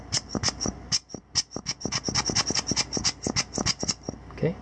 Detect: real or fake real